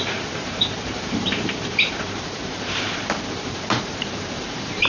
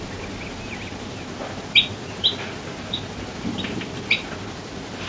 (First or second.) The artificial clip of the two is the first